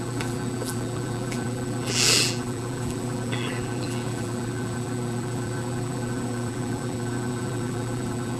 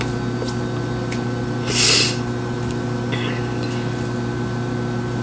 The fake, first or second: first